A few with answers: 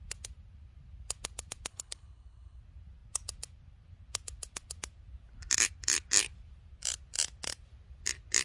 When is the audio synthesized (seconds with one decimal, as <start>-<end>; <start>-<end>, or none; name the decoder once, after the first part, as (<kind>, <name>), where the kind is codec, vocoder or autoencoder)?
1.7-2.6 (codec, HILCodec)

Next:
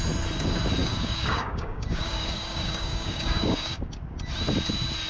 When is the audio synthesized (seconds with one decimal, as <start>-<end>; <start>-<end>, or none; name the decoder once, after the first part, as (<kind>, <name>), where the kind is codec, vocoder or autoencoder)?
0.8-3.9 (codec, DAC)

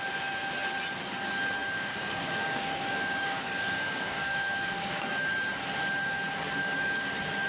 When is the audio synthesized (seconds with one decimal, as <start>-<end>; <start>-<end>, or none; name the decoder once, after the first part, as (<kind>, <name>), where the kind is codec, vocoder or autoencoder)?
1.6-5.0 (codec, DAC); 6.6-7.1

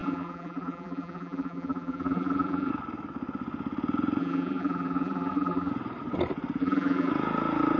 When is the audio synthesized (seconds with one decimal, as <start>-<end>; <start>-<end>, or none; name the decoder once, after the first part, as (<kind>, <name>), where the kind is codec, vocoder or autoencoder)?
0.0-2.7 (vocoder, BigVGAN v2); 4.2-5.7; 6.6-7.1

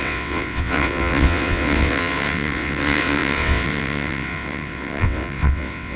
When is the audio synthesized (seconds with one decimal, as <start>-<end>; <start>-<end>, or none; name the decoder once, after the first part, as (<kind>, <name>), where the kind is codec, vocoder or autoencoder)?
0.0-6.0 (vocoder, WaveNeXt)

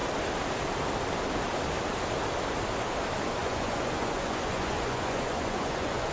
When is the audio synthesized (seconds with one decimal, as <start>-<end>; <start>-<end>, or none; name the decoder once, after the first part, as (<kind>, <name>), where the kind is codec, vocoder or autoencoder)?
3.4-6.1 (vocoder, Vocos)